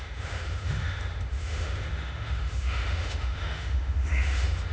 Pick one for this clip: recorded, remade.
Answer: remade